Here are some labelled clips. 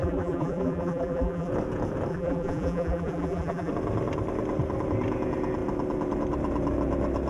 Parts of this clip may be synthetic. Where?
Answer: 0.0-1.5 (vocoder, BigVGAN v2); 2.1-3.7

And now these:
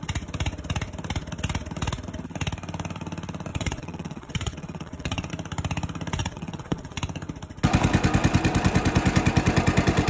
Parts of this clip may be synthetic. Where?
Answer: 3.5-5.3 (vocoder, WaveNeXt); 6.2-7.0

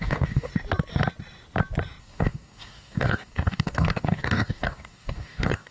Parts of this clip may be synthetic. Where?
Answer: 0.0-0.5 (codec, DAC); 2.0-5.7

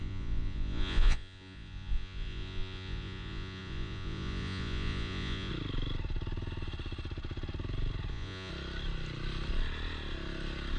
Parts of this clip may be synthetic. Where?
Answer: 0.0-5.5 (vocoder, Vocos); 8.1-8.5

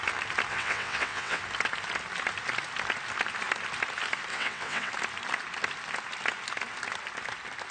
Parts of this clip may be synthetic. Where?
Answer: 0.5-1.4 (vocoder, WaveNeXt); 4.3-4.9

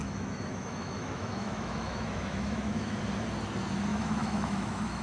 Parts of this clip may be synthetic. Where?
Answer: 0.0-3.0 (autoencoder, DAC-VAE); 3.9-5.0

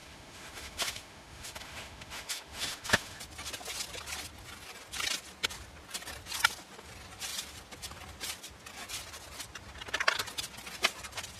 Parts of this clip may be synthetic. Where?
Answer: 0.0-3.2 (autoencoder, DAC-VAE)